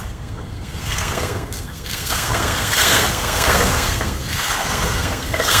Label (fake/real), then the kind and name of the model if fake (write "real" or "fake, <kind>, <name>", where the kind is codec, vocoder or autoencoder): fake, codec, SNAC